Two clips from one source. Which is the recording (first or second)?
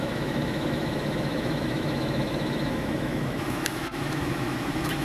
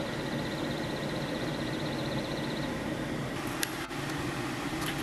second